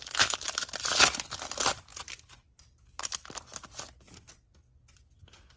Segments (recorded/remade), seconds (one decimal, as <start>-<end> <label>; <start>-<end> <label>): 0.0-5.6 recorded